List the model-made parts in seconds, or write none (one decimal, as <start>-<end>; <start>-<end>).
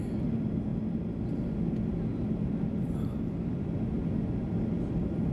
none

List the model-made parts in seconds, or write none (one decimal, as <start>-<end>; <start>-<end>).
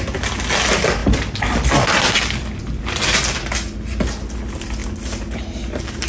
1.0-2.8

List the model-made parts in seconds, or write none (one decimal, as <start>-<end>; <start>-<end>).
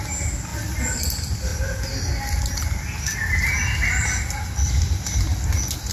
0.5-1.0